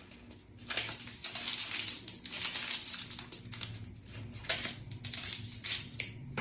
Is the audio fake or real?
real